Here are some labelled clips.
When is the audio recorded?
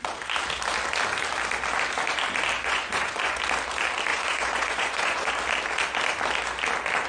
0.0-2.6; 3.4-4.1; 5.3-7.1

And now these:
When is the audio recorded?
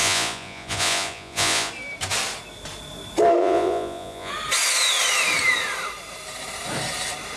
1.7-3.4; 4.3-7.4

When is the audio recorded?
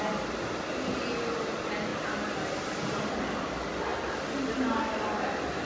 0.0-5.6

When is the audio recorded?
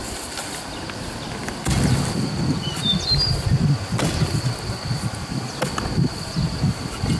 0.0-7.2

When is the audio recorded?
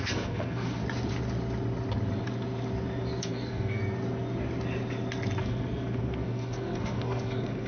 0.8-3.2; 3.8-5.4